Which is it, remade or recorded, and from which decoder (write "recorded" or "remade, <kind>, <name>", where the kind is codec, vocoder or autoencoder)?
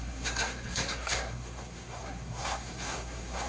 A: remade, codec, SNAC